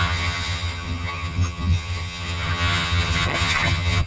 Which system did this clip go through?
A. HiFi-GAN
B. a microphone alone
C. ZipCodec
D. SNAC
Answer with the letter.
A